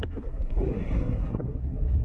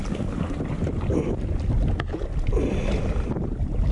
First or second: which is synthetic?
first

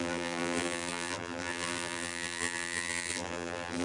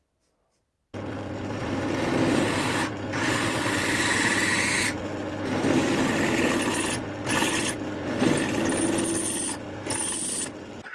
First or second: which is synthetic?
first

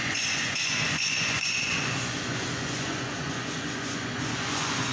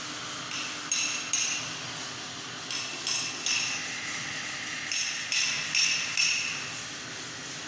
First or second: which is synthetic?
first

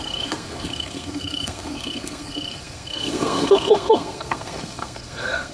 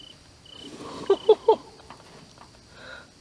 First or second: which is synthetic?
first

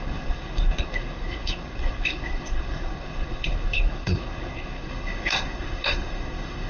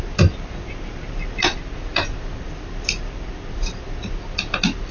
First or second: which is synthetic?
first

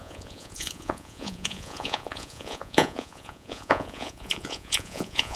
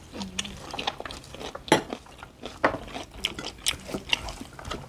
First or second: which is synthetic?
first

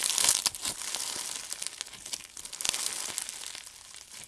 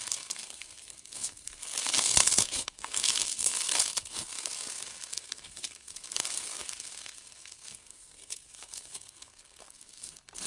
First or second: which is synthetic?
second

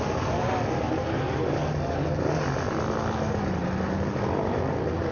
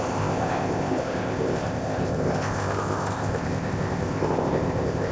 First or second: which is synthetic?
second